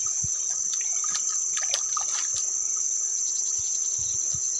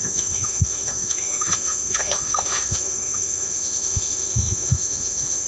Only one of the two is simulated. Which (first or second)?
second